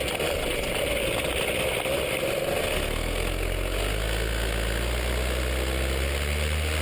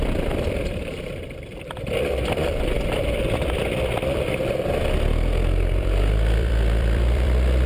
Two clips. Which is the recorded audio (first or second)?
first